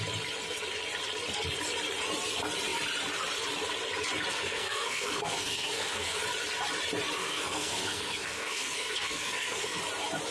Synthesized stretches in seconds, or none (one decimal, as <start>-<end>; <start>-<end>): 4.3-6.2; 7.2-9.8